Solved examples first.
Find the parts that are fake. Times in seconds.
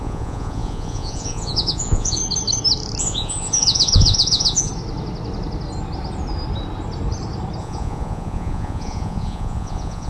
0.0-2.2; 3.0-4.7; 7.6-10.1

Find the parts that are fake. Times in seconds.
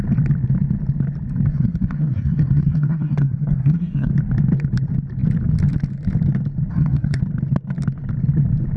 1.5-4.1; 6.7-7.2